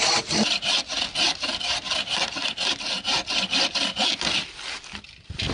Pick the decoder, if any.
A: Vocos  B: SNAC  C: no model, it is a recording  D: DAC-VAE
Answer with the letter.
C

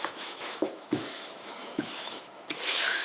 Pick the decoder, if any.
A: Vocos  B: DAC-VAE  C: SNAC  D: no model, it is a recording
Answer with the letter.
B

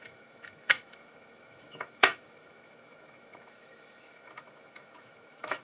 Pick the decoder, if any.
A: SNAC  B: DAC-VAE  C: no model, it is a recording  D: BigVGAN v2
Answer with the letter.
B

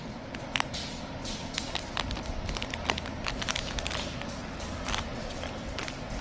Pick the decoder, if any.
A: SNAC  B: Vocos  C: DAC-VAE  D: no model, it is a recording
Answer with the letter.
D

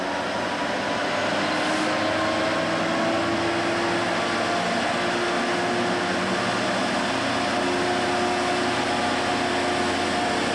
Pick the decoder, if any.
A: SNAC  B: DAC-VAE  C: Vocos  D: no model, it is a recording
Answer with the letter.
D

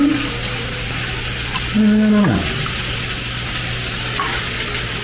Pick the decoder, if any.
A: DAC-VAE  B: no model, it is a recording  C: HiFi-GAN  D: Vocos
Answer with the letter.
B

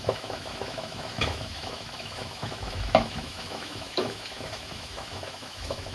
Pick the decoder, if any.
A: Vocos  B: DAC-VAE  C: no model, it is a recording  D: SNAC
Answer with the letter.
B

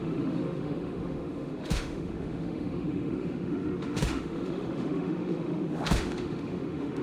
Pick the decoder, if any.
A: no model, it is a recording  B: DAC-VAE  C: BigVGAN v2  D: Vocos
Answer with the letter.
B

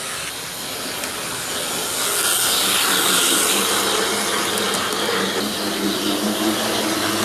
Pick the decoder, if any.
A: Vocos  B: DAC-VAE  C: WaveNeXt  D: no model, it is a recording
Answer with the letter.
D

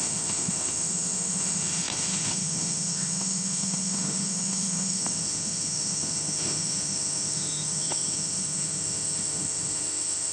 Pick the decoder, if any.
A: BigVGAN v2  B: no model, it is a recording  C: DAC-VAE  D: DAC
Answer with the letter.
C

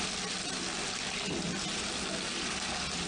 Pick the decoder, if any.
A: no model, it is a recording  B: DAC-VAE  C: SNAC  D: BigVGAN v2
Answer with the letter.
A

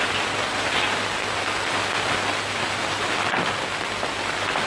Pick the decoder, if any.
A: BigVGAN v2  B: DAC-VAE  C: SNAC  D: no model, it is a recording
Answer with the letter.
D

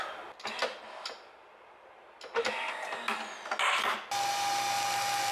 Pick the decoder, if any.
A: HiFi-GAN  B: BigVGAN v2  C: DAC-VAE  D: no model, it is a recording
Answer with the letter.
D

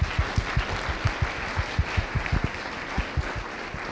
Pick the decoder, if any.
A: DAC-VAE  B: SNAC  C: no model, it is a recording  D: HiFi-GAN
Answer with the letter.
C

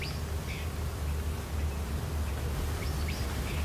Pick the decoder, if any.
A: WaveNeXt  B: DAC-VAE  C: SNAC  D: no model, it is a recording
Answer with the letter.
D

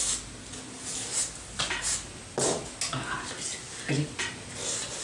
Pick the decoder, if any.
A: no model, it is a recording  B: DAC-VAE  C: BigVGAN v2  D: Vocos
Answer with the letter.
A